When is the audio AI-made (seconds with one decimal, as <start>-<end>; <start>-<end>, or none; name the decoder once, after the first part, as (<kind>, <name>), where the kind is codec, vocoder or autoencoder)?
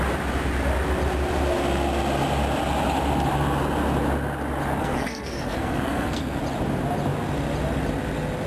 4.8-6.4 (codec, SNAC)